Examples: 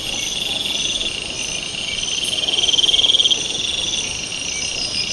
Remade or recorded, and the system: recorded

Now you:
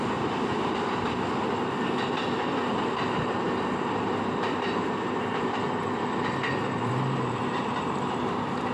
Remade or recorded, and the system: recorded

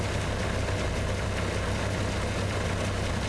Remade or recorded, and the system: recorded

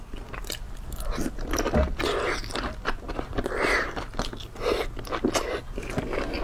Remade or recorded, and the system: recorded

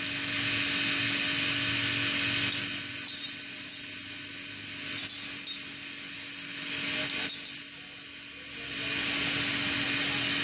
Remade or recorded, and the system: recorded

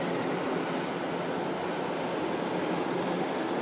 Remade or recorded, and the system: recorded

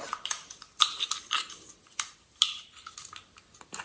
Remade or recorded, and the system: recorded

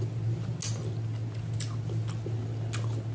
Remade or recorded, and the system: recorded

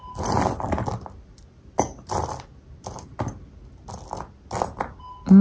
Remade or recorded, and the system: recorded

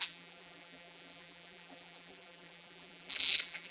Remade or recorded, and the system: remade, vocoder, BigVGAN v2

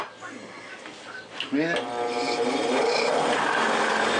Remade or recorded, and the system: recorded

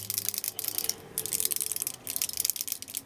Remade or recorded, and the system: recorded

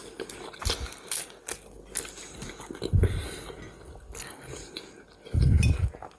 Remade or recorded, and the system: recorded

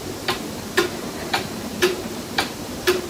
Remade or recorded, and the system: remade, vocoder, BigVGAN v2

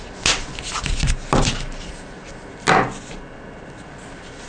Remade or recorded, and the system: recorded